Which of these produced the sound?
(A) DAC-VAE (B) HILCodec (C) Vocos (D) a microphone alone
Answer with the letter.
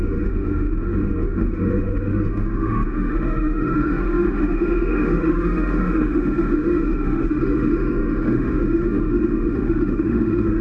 A